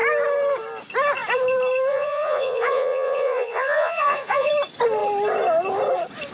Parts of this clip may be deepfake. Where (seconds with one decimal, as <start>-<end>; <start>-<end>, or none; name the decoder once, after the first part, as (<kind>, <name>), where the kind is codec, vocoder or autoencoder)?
1.9-4.5 (vocoder, Vocos)